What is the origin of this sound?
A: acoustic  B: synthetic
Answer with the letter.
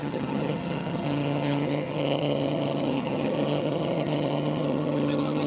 B